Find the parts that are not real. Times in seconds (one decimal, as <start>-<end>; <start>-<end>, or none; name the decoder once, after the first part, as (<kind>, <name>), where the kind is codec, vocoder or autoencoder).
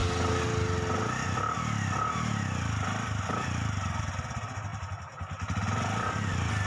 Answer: none